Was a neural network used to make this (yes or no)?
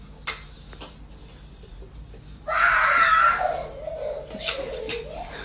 no